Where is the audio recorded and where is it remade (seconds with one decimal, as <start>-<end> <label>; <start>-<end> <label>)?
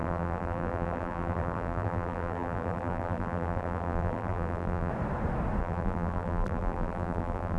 0.0-4.9 remade; 4.9-5.6 recorded; 5.6-7.6 remade